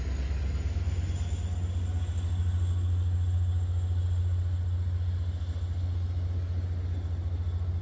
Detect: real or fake real